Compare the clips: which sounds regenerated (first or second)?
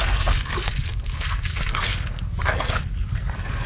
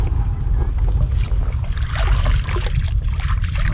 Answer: first